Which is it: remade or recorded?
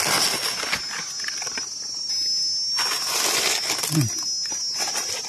recorded